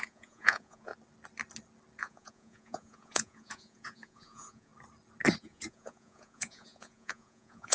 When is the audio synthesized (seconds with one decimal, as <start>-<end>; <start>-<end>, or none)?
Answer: 0.0-0.9; 2.0-4.7; 5.4-7.7